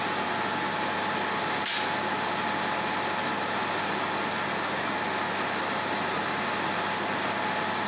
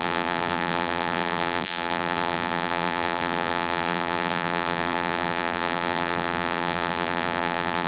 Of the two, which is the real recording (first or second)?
first